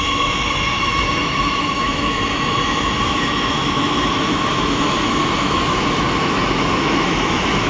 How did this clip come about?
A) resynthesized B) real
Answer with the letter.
A